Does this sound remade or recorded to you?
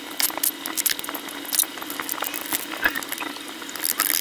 recorded